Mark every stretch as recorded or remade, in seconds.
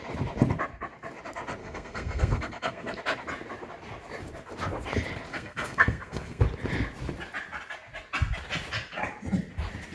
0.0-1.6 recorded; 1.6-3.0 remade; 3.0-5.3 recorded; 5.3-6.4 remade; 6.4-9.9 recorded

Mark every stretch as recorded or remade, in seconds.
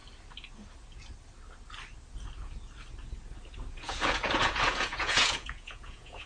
0.0-3.7 recorded; 3.7-6.3 remade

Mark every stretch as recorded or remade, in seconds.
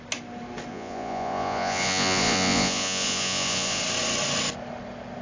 0.0-0.7 recorded; 0.7-3.8 remade; 3.8-5.2 recorded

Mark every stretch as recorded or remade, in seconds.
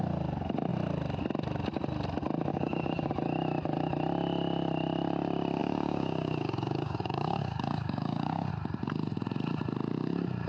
0.0-2.5 recorded; 2.5-3.1 remade; 3.1-5.6 recorded; 5.6-8.5 remade; 8.5-10.5 recorded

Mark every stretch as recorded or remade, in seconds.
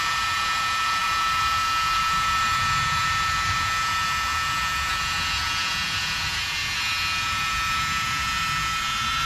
0.0-6.6 remade; 6.6-7.2 recorded; 7.2-9.3 remade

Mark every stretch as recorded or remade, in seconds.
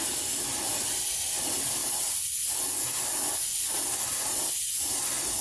0.0-5.4 recorded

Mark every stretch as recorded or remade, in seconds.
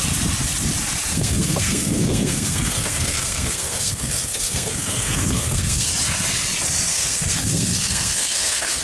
0.0-1.1 recorded; 1.1-5.9 remade; 5.9-6.9 recorded; 6.9-8.8 remade